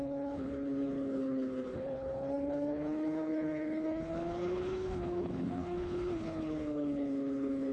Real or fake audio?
fake